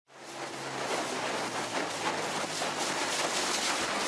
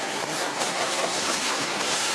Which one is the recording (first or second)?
first